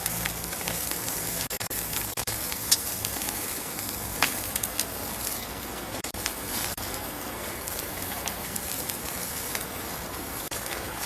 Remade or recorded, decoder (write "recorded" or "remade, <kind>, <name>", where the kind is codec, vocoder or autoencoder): remade, codec, SNAC